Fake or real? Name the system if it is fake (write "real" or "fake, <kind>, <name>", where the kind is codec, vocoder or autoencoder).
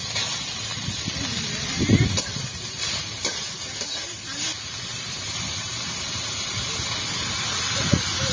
real